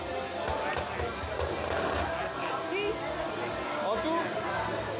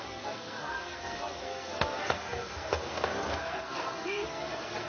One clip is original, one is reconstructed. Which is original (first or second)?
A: first